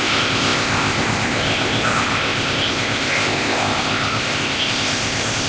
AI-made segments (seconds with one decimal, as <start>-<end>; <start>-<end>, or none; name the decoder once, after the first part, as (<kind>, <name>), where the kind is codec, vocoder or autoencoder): 0.0-5.5 (codec, ZipCodec)